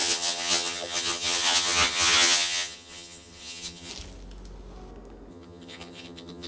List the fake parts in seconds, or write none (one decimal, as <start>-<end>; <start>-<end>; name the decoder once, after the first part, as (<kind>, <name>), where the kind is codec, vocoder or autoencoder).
0.0-3.9 (vocoder, HiFi-GAN); 5.3-6.5